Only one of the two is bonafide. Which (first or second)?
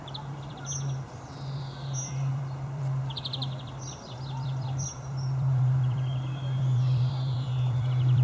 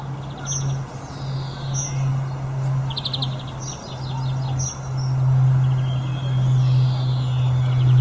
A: second